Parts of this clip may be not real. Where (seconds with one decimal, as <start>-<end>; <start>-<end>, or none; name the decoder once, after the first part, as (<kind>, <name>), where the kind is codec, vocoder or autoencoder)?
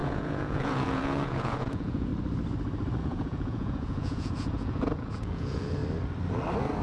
0.0-2.1 (vocoder, Vocos); 3.0-5.8